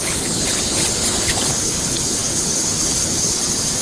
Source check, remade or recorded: remade